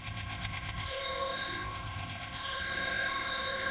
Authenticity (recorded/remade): remade